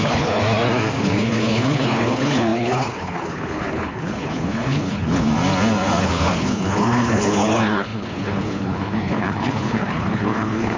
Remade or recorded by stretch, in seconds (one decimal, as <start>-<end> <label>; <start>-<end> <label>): 0.0-0.4 remade; 0.4-1.0 recorded; 1.0-5.3 remade; 5.3-6.0 recorded; 6.0-10.8 remade